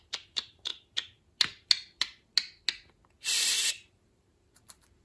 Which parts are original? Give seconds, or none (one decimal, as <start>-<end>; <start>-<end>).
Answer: 0.7-3.7